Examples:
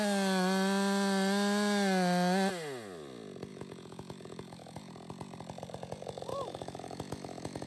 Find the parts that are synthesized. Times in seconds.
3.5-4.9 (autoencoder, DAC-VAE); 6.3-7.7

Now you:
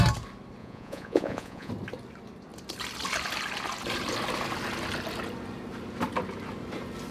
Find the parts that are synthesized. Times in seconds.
0.6-1.7 (vocoder, Vocos)

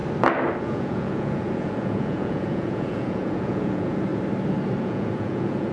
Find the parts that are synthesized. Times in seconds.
0.6-4.1 (vocoder, Vocos); 4.8-5.7

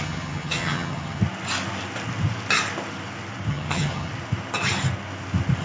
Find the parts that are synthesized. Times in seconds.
0.0-1.2 (vocoder, HiFi-GAN); 3.5-4.1

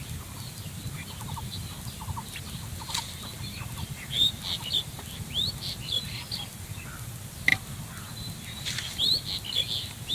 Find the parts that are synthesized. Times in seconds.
none

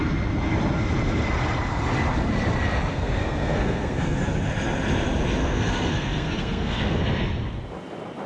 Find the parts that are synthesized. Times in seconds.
2.9-4.2 (codec, SNAC); 5.4-7.0

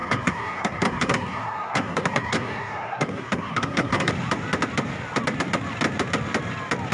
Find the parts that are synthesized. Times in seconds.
0.0-4.1 (codec, SNAC)

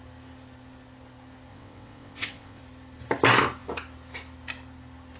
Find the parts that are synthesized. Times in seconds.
1.5-2.6 (vocoder, WaveNeXt)